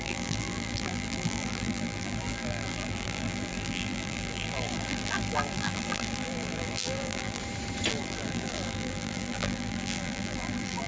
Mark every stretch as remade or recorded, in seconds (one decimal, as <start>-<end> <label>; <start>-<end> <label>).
0.0-7.4 remade; 7.4-7.9 recorded; 7.9-10.9 remade